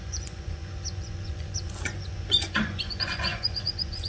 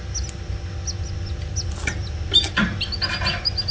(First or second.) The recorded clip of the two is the second